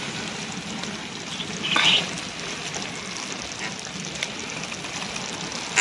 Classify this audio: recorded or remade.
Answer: recorded